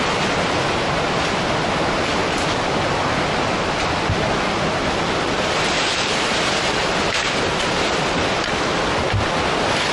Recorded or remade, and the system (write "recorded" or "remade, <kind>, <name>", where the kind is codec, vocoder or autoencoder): recorded